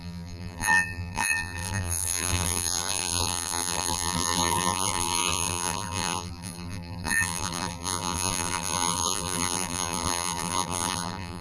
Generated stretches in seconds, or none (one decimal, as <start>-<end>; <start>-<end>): 0.0-11.4